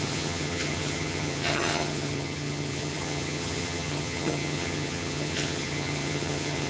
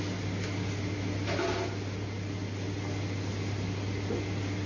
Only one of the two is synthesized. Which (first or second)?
first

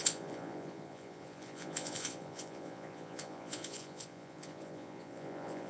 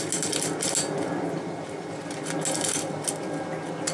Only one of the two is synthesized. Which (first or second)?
first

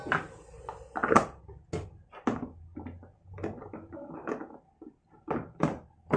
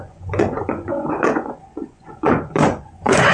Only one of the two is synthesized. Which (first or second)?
second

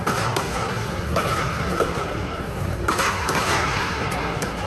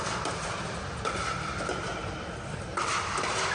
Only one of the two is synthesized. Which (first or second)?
first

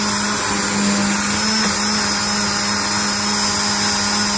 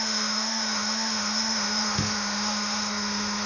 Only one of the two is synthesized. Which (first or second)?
second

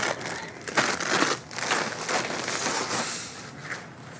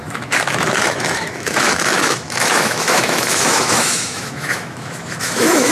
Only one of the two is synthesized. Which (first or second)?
second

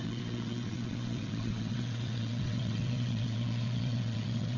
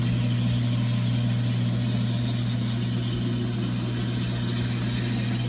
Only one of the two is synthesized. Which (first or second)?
first